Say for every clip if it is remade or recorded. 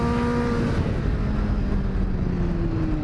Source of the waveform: recorded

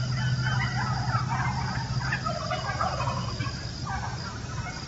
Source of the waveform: recorded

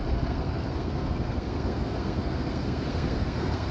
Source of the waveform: remade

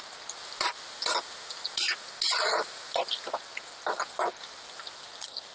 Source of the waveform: recorded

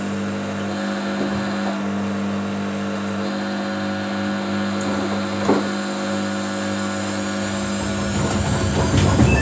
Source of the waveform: recorded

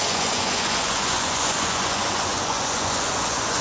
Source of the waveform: remade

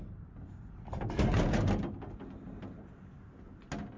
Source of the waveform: recorded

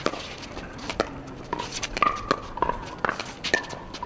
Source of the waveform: recorded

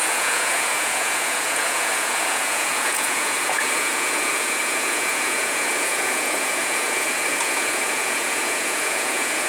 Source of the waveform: remade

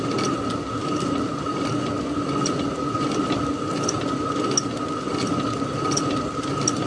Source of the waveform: recorded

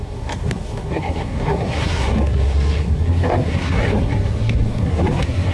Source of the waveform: remade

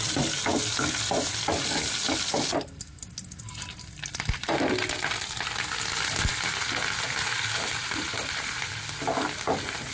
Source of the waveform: recorded